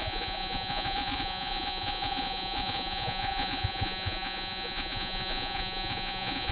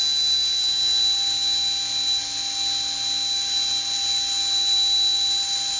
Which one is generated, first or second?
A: first